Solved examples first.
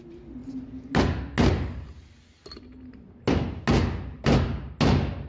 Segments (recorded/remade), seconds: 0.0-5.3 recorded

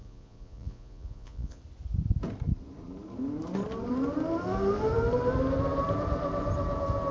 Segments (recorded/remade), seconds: 0.0-1.6 remade; 1.6-7.1 recorded